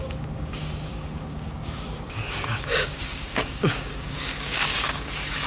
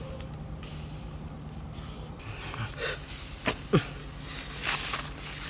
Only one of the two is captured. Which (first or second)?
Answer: second